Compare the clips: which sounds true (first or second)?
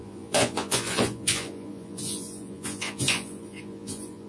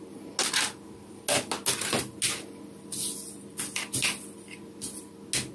second